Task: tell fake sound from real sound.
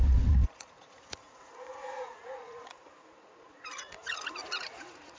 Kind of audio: fake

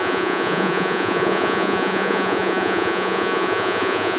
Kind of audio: fake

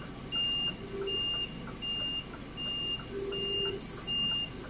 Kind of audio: real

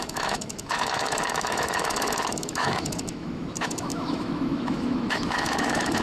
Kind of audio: fake